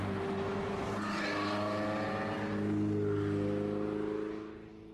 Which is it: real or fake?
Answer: real